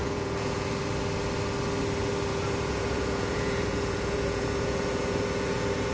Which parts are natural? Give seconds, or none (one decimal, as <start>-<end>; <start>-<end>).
0.8-2.3